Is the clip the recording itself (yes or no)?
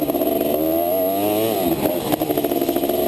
yes